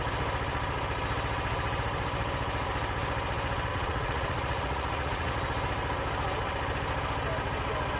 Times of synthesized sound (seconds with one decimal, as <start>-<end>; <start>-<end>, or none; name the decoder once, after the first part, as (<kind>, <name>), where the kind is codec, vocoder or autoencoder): 3.7-5.3 (vocoder, Vocos)